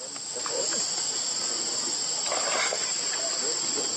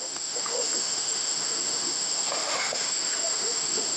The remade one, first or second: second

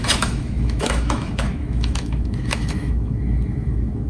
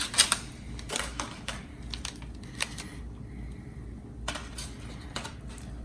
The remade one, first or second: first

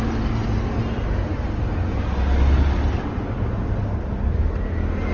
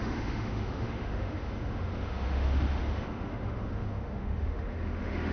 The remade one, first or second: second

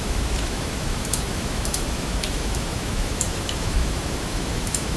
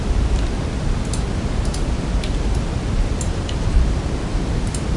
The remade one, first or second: first